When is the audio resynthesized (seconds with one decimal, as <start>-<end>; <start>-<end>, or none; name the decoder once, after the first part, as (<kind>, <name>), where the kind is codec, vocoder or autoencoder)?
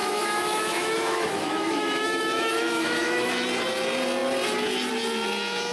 0.0-3.3 (autoencoder, DAC-VAE)